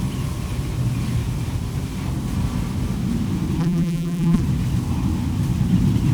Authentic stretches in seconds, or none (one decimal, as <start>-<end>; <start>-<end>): 0.0-3.6; 4.4-6.1